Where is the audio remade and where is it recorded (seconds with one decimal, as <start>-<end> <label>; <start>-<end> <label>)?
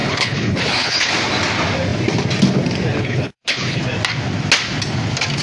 0.0-1.1 remade; 1.1-3.0 recorded; 3.0-3.8 remade; 3.8-5.4 recorded